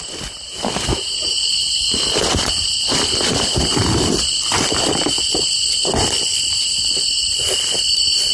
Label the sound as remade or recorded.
remade